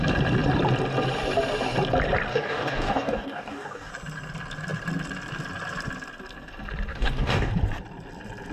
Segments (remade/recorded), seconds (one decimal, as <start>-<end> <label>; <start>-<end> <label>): 0.0-2.3 recorded; 2.3-3.9 remade; 3.9-6.9 recorded; 6.9-7.5 remade; 7.5-8.5 recorded